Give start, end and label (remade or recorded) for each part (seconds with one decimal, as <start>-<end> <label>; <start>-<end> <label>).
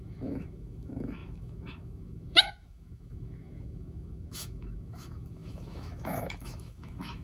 0.0-7.2 remade